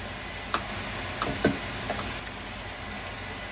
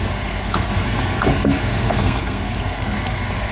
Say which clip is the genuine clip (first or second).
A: first